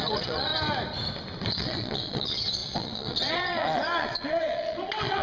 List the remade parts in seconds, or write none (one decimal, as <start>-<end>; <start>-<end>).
0.0-0.5; 1.5-5.2